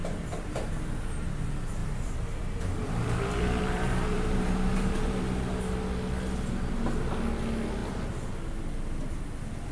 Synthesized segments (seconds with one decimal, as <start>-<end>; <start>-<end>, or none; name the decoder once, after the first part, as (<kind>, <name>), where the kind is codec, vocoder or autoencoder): 0.0-0.5 (vocoder, BigVGAN v2); 1.8-5.2; 7.8-8.3